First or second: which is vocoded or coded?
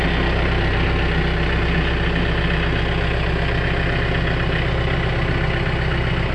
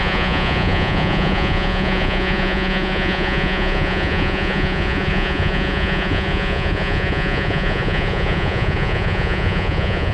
second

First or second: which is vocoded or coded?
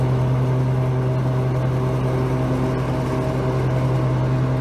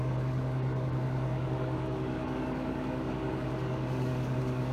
second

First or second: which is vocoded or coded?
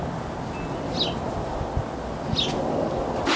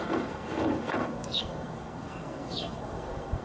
second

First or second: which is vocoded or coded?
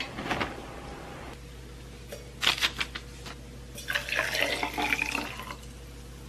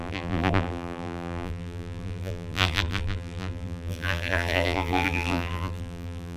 second